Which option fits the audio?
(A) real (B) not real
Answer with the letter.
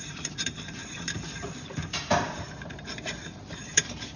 B